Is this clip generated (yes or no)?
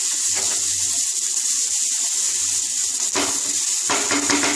no